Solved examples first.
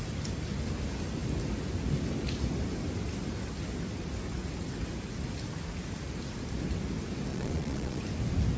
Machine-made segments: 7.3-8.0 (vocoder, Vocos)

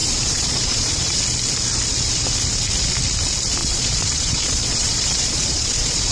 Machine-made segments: 0.0-1.2 (vocoder, Vocos); 3.6-6.1